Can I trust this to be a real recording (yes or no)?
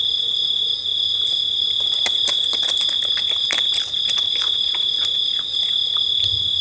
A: yes